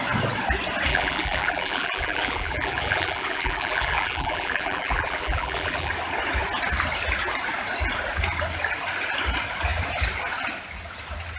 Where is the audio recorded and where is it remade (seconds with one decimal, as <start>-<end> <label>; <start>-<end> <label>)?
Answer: 0.0-0.9 recorded; 0.9-5.9 remade; 5.9-11.4 recorded